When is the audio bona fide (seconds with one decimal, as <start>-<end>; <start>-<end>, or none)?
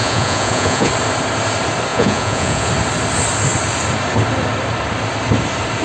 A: 0.9-1.9; 2.7-5.8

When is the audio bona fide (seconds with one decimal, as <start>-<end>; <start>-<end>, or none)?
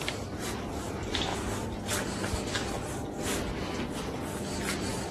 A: 1.3-4.4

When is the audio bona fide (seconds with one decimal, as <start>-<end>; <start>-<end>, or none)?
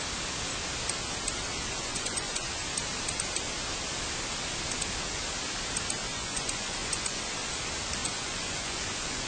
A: 0.0-1.8; 2.5-6.1; 7.2-8.0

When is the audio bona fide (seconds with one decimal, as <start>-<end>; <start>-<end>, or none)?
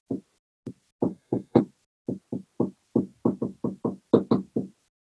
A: 0.0-1.1; 1.6-5.0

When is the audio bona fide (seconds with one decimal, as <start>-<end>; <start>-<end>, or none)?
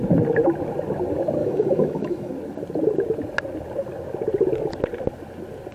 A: 0.0-1.4; 2.3-5.7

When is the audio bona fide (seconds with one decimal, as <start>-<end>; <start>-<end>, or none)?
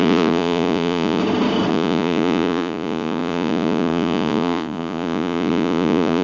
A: 1.2-1.7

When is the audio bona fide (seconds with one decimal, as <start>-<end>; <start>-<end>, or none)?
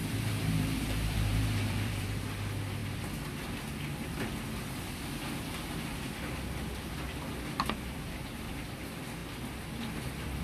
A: 2.2-10.4